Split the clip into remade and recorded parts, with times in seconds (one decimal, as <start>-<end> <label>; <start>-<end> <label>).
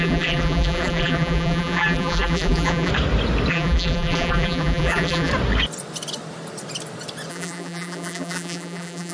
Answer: 0.0-2.9 remade; 2.9-3.5 recorded; 3.5-5.3 remade; 5.3-7.3 recorded; 7.3-9.1 remade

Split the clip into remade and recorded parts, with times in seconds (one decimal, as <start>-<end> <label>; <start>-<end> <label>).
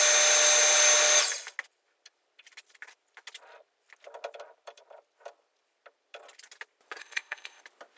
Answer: 0.0-7.0 recorded; 7.0-7.6 remade; 7.6-8.0 recorded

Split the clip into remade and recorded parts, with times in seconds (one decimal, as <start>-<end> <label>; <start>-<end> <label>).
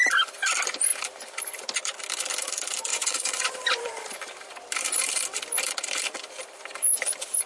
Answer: 0.0-2.9 recorded; 2.9-3.9 remade; 3.9-7.5 recorded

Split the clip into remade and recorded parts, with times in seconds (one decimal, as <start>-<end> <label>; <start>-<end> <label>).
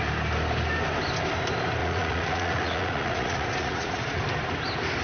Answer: 0.0-1.8 recorded; 1.8-4.2 remade; 4.2-5.0 recorded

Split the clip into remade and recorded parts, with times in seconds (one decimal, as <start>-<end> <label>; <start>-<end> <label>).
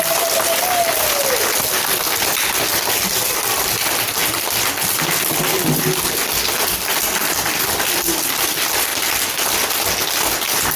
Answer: 0.0-10.8 recorded